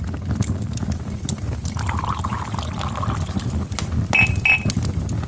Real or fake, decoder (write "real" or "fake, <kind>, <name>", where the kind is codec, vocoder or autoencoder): real